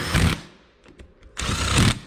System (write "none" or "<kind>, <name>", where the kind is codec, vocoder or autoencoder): none